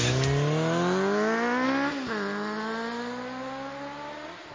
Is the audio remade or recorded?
recorded